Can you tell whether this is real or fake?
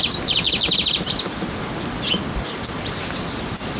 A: real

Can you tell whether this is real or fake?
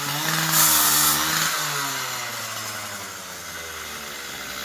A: real